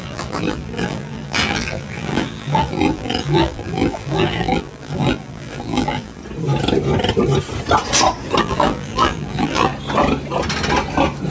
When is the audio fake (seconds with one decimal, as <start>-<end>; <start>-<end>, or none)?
0.0-6.2; 8.4-9.7